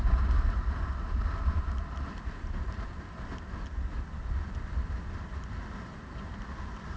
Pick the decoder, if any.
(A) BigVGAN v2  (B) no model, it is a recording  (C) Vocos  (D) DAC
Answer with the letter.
B